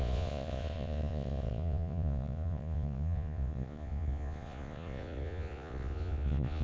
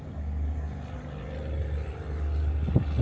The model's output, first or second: first